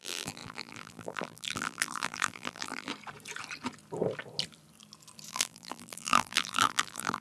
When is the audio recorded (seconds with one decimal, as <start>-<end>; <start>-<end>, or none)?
2.9-5.3